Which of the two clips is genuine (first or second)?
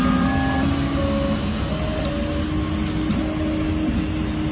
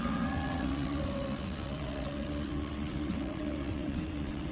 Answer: first